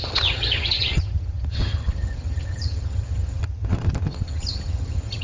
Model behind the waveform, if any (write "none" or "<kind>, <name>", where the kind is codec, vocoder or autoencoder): vocoder, HiFi-GAN